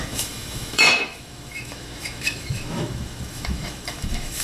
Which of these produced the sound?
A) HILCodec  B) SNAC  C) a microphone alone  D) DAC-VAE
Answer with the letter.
D